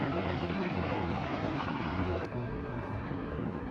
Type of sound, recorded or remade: remade